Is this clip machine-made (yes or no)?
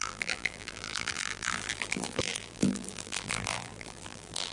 yes